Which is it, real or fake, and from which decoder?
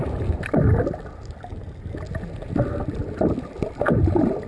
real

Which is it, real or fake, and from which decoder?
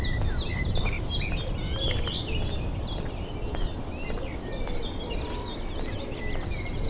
real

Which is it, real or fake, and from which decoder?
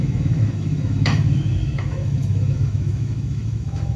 fake, autoencoder, DAC-VAE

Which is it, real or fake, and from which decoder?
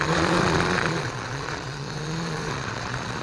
fake, vocoder, Vocos